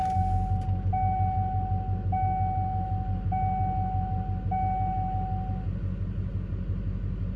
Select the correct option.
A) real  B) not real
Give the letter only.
A